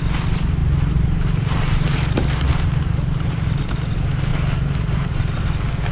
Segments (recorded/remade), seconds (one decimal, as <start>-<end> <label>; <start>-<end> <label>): 0.0-0.6 recorded; 0.6-3.6 remade; 3.6-4.3 recorded; 4.3-5.4 remade; 5.4-5.9 recorded

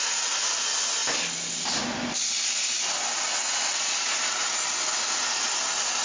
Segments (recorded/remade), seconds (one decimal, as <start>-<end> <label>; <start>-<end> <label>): 0.0-6.0 recorded

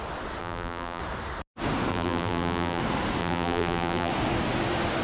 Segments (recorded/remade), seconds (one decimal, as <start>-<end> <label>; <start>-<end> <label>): 0.0-0.4 recorded; 0.4-1.0 remade; 1.0-1.9 recorded; 1.9-2.8 remade; 2.8-3.2 recorded; 3.2-4.1 remade; 4.1-5.0 recorded

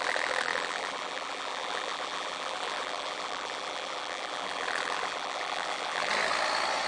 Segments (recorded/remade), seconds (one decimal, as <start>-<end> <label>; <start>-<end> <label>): 0.0-6.1 remade; 6.1-6.9 recorded

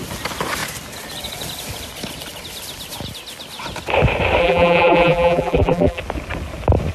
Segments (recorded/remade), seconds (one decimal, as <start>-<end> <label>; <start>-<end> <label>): 0.0-4.4 recorded; 4.4-6.0 remade; 6.0-6.9 recorded

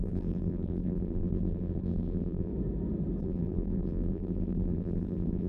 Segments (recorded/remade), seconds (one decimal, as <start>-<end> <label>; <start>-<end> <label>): 0.0-2.5 remade; 2.5-3.2 recorded; 3.2-5.5 remade